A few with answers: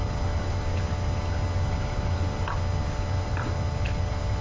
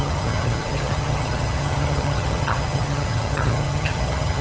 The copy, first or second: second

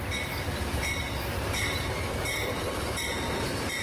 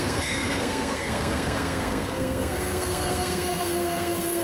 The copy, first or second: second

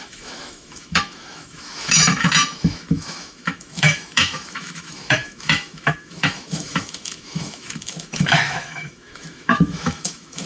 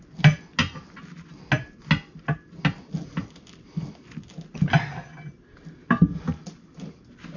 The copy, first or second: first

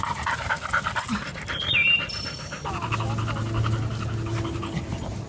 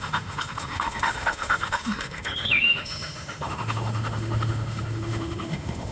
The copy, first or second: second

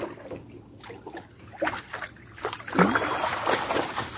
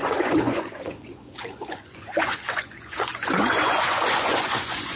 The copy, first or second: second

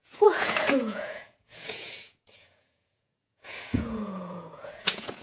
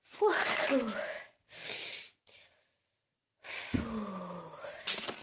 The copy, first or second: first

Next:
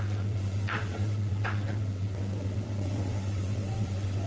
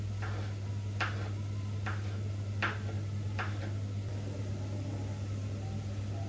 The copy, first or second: first